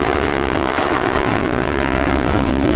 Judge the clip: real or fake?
fake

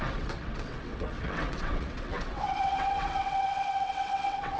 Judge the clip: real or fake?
fake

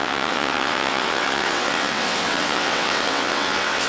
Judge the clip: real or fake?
fake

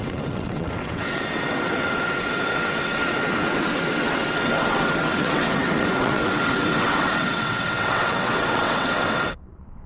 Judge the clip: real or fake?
fake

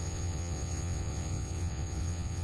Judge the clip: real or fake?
fake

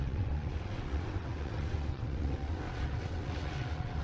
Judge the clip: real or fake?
fake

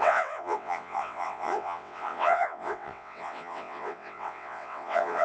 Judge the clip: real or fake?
fake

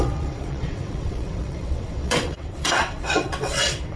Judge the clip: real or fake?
fake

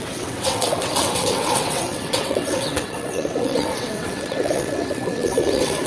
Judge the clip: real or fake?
fake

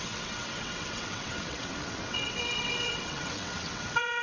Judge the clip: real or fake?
fake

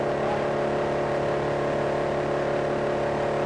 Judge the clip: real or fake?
real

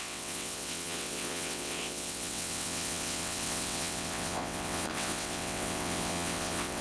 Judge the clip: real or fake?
fake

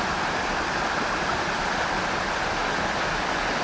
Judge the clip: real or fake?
real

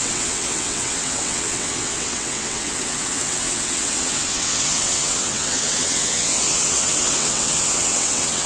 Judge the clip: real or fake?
fake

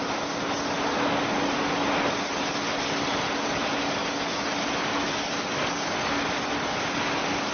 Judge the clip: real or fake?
real